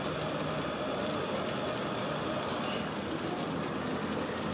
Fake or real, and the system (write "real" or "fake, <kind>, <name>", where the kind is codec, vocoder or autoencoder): real